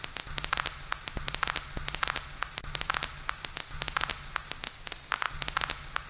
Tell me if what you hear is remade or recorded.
recorded